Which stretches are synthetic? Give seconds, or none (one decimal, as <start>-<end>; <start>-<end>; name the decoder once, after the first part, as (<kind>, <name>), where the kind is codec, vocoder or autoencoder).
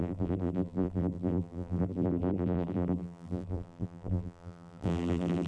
0.0-5.5 (vocoder, BigVGAN v2)